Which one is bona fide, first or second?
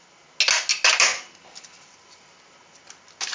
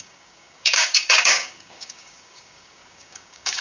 first